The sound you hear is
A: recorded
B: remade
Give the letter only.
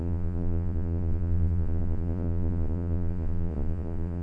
B